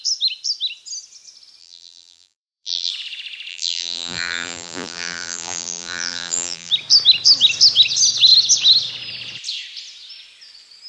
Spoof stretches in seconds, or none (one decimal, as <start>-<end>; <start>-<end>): 1.6-2.9; 3.5-6.7